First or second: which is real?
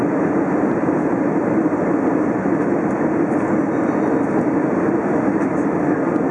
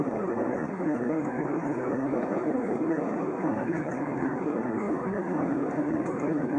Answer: first